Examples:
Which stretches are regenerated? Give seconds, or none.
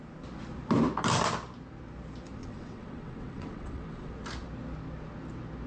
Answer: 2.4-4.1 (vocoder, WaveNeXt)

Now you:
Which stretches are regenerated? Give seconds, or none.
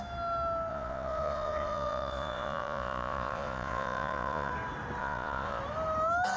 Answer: 0.7-4.5 (vocoder, Vocos); 5.0-5.6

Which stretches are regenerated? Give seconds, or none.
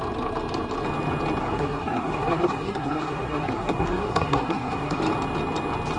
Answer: 1.4-5.0 (codec, SNAC)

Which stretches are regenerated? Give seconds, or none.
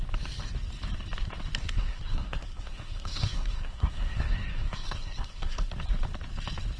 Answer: 1.6-5.7 (codec, SNAC)